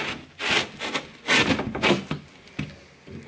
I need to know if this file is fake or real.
real